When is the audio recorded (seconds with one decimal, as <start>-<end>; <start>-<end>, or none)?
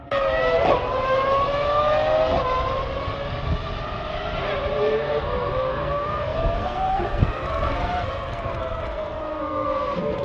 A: 0.4-4.8